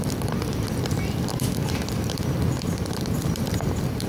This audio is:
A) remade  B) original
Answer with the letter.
A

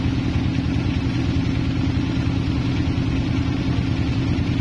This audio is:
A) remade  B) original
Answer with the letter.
B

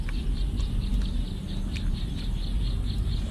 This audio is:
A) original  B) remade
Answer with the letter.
A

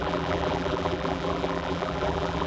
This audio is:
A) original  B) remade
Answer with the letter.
B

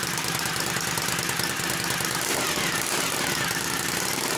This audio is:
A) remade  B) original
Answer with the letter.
A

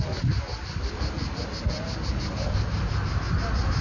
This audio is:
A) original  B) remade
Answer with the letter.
A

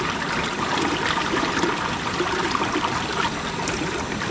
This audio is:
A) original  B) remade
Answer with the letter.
A